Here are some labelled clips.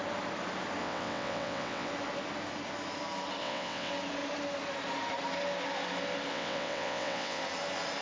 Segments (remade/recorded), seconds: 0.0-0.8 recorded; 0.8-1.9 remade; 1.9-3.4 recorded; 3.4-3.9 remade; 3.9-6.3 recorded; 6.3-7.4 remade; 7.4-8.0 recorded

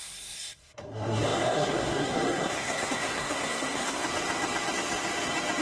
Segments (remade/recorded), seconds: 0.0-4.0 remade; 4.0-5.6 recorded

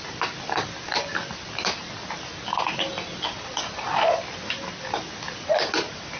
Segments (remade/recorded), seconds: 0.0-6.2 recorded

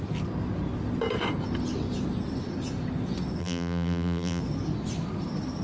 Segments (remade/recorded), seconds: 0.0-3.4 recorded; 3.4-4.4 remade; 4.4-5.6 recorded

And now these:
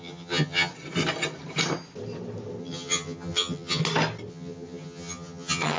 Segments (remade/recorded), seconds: 0.0-0.7 remade; 0.7-2.6 recorded; 2.6-3.8 remade; 3.8-4.3 recorded; 4.3-5.8 remade

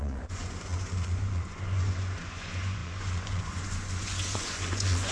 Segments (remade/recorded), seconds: 0.0-5.1 remade

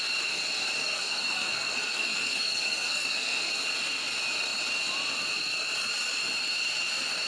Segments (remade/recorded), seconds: 0.0-0.8 recorded; 0.8-3.5 remade; 3.5-7.3 recorded

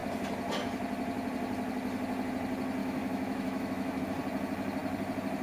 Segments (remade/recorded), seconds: 0.0-2.8 recorded; 2.8-4.0 remade; 4.0-5.4 recorded